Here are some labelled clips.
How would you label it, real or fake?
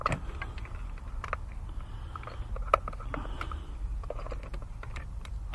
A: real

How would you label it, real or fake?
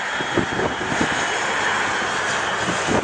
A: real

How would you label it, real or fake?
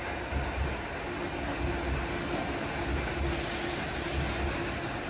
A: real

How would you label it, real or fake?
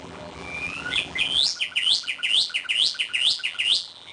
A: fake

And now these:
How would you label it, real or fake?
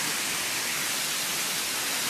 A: real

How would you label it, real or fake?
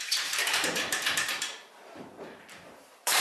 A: fake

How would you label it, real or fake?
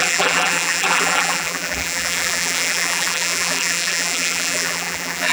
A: fake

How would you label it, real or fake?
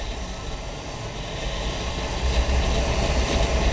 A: real